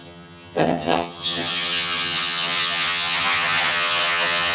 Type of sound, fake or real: fake